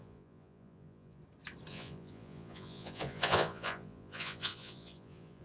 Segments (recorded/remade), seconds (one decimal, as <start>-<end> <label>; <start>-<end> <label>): 0.0-1.2 remade; 1.2-1.7 recorded; 1.7-5.4 remade